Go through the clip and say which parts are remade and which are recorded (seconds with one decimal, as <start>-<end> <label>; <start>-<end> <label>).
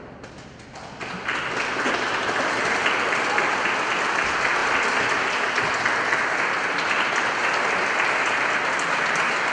0.0-9.5 recorded